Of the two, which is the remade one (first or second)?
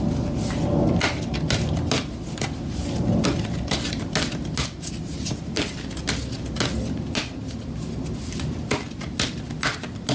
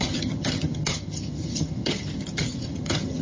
second